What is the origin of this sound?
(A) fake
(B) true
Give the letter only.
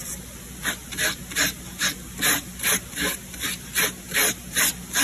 B